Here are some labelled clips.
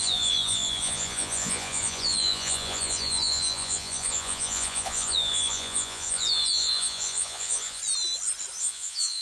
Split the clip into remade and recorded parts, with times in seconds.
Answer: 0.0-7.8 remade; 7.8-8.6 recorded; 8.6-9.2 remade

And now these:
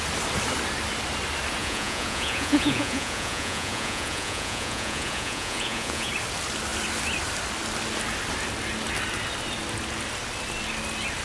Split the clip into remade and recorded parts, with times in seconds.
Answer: 0.0-1.6 recorded; 1.6-6.1 remade; 6.1-11.2 recorded

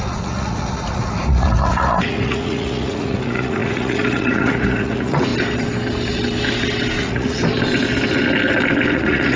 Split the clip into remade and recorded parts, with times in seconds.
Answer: 0.0-5.3 remade; 5.3-7.0 recorded; 7.0-7.4 remade; 7.4-8.9 recorded; 8.9-9.4 remade

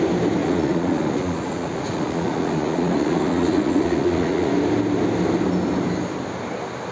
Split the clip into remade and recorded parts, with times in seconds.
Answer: 0.0-0.4 recorded; 0.4-4.5 remade; 4.5-6.9 recorded

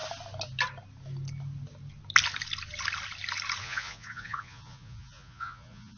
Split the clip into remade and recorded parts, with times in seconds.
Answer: 0.0-3.6 recorded; 3.6-6.0 remade

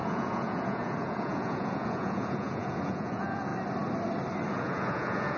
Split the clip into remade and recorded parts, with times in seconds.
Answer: 0.0-3.5 remade; 3.5-4.5 recorded; 4.5-5.4 remade